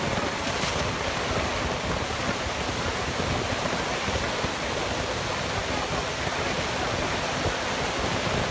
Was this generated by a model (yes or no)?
no